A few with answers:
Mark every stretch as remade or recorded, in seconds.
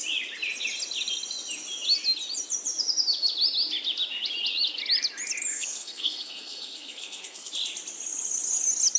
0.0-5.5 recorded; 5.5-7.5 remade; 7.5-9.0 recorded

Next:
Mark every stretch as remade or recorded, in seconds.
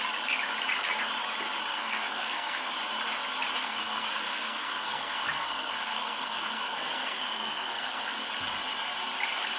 0.0-1.7 recorded; 1.7-2.7 remade; 2.7-3.6 recorded; 3.6-8.3 remade; 8.3-9.6 recorded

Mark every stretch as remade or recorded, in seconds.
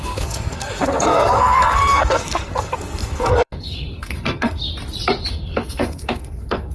0.0-4.6 remade; 4.6-5.3 recorded; 5.3-6.7 remade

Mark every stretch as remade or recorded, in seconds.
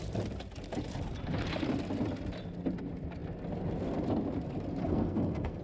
0.0-4.8 recorded; 4.8-5.6 remade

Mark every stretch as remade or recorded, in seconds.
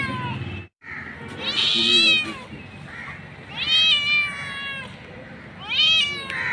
0.0-6.5 recorded